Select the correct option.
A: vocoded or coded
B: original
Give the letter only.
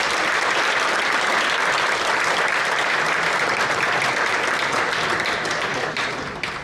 A